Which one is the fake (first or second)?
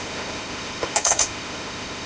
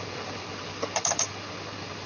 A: first